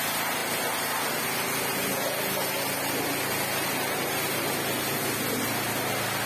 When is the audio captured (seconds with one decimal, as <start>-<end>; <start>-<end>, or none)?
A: 0.0-6.3